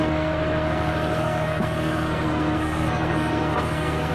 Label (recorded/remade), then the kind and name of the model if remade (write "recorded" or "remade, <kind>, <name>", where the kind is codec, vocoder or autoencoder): remade, codec, SNAC